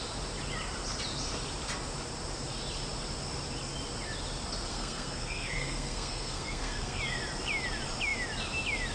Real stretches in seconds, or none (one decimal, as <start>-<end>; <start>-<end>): 0.0-4.7; 7.0-8.9